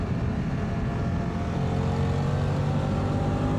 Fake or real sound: real